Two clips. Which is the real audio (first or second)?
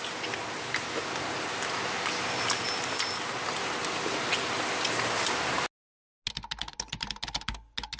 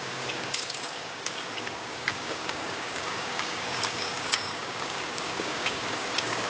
first